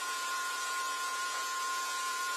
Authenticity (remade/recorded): remade